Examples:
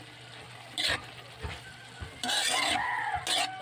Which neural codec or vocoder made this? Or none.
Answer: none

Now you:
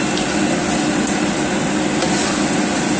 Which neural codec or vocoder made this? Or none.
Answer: none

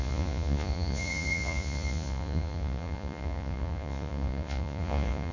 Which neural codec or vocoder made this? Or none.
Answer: vocoder, Vocos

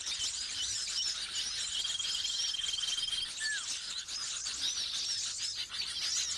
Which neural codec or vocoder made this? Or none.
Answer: none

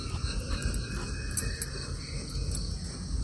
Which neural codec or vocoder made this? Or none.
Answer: none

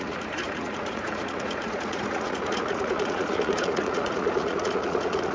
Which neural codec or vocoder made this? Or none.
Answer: vocoder, Vocos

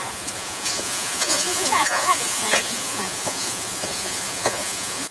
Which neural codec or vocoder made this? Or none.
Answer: vocoder, Vocos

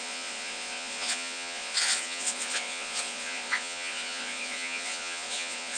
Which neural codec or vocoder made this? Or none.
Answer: vocoder, Vocos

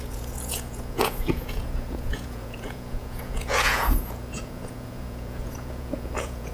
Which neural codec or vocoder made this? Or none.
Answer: vocoder, Vocos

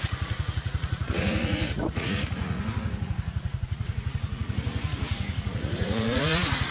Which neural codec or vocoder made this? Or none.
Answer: vocoder, Vocos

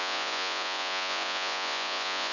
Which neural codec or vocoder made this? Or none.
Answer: vocoder, Vocos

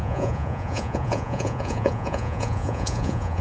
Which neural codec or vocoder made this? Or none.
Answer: vocoder, Vocos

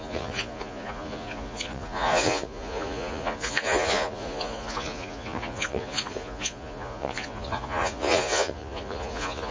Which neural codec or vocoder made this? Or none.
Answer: vocoder, Vocos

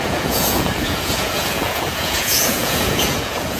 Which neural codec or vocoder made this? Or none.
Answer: vocoder, Vocos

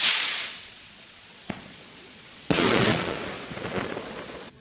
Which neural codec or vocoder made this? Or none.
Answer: vocoder, Vocos